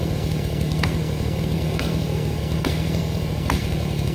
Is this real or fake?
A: fake